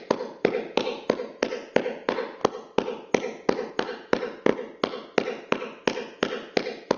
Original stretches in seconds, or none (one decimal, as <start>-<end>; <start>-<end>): 2.4-3.7; 4.5-7.0